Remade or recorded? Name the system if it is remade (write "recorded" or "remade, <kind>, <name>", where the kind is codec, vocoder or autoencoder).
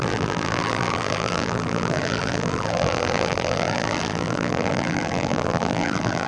remade, vocoder, BigVGAN v2